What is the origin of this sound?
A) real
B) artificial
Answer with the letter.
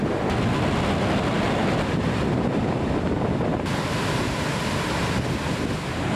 A